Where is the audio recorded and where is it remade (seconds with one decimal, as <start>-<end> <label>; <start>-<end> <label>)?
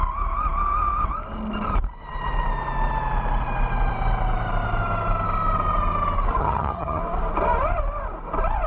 0.0-6.4 recorded; 6.4-7.0 remade; 7.0-8.7 recorded